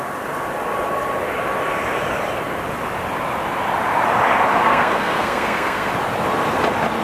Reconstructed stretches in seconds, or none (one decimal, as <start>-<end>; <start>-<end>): 4.5-5.9